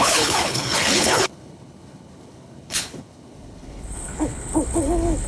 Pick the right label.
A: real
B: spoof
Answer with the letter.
B